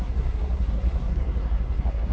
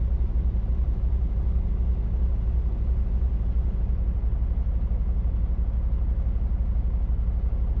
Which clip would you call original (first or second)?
second